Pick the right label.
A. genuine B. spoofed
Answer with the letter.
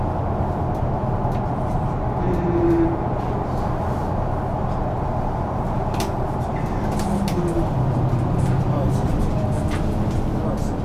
A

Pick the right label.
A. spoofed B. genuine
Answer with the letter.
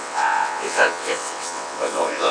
A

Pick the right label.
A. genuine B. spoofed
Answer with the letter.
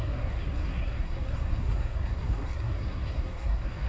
B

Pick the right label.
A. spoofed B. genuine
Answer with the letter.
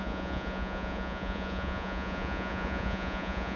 A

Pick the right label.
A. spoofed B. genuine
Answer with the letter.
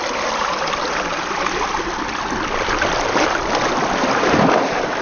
B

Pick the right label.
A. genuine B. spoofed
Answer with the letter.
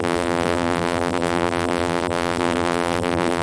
B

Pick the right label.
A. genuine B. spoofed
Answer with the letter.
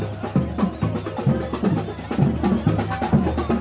A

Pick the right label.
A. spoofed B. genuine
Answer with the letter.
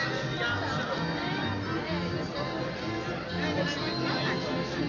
B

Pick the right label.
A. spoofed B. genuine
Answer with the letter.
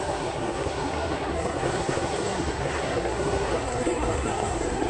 A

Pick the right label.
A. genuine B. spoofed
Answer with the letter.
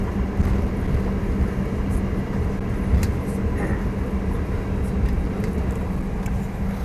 A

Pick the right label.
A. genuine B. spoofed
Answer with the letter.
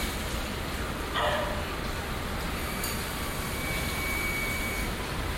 B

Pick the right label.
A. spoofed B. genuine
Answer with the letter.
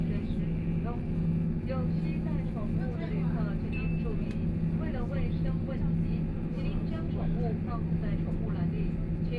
B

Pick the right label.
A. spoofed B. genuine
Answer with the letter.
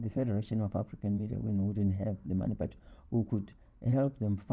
A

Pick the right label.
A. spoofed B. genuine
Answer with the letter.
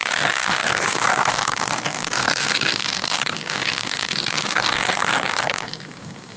A